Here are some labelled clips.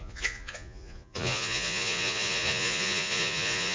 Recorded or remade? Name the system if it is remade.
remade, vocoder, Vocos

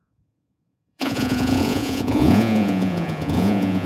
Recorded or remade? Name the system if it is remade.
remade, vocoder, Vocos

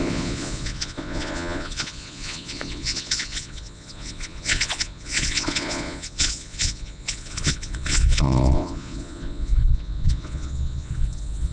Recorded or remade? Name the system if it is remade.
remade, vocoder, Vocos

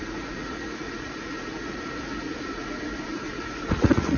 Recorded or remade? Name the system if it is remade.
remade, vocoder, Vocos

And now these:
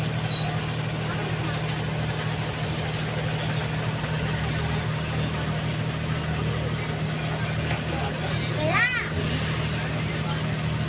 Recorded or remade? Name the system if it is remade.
recorded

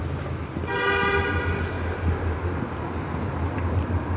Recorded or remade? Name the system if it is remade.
recorded